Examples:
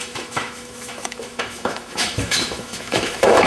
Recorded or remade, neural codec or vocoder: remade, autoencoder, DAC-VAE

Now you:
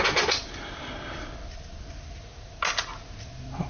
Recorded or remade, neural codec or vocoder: recorded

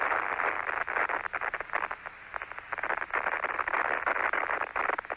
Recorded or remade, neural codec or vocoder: recorded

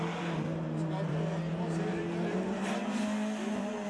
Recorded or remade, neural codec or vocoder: recorded